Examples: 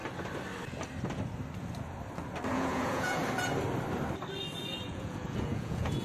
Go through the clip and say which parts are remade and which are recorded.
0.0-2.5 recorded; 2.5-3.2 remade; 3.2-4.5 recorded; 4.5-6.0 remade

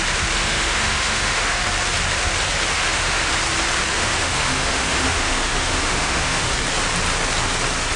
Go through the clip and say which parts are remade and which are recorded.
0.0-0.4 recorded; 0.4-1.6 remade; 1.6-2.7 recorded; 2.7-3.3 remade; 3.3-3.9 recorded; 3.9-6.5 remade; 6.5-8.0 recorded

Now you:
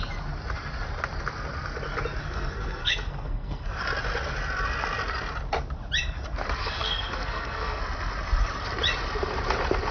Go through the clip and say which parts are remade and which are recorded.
0.0-2.2 recorded; 2.2-3.8 remade; 3.8-6.6 recorded; 6.6-7.8 remade; 7.8-9.9 recorded

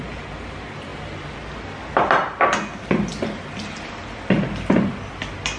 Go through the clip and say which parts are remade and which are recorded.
0.0-5.6 recorded

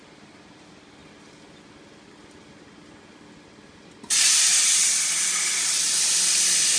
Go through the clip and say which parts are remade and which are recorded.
0.0-1.0 remade; 1.0-4.2 recorded; 4.2-4.8 remade; 4.8-5.6 recorded; 5.6-6.8 remade